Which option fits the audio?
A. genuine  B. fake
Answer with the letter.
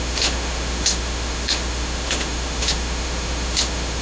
B